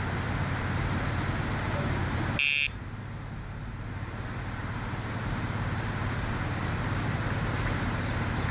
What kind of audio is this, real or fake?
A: real